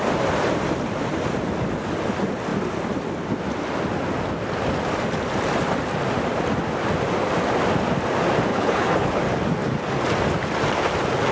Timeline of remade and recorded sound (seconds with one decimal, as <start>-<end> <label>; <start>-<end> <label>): 0.0-8.5 recorded; 8.5-9.2 remade; 9.2-11.3 recorded